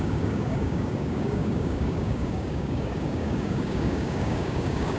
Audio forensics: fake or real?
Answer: fake